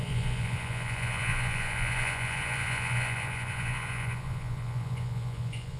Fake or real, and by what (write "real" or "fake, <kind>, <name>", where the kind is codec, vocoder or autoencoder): fake, vocoder, Vocos